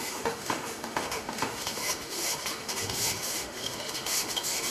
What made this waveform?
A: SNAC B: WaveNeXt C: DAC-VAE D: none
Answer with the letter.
C